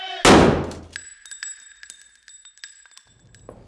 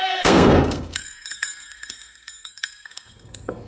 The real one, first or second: first